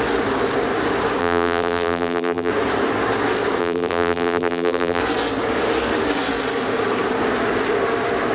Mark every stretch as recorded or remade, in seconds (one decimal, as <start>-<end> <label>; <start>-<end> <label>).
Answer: 0.0-1.2 recorded; 1.2-2.5 remade; 2.5-3.6 recorded; 3.6-5.0 remade; 5.0-8.3 recorded